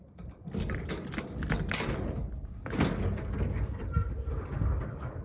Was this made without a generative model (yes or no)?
yes